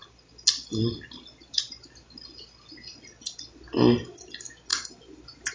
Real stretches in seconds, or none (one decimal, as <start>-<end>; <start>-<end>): 0.0-4.7